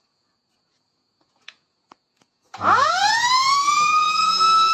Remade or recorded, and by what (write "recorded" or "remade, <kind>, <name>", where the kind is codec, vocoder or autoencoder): remade, vocoder, Vocos